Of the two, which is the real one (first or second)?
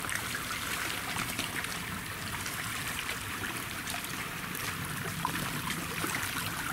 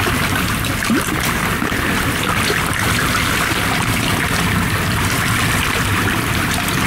second